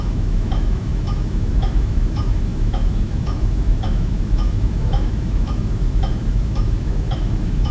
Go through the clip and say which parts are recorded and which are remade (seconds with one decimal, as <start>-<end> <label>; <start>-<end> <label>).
0.0-7.7 remade

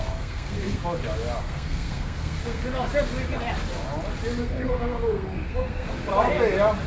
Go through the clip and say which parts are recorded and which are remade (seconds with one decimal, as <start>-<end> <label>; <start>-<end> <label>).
0.0-0.8 remade; 0.8-1.4 recorded; 1.4-2.6 remade; 2.6-4.4 recorded; 4.4-6.1 remade; 6.1-6.9 recorded

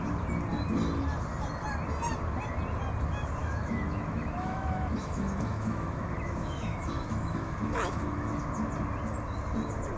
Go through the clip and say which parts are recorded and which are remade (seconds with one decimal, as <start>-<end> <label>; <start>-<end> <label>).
0.0-3.4 recorded; 3.4-8.4 remade; 8.4-10.0 recorded

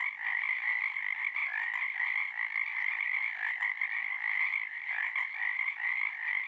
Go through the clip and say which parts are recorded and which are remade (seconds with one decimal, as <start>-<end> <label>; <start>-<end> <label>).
0.0-6.5 recorded